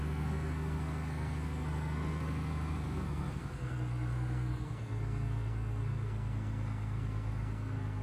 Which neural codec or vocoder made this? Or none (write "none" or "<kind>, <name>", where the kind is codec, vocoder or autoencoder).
codec, SNAC